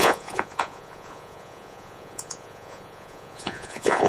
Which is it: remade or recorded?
remade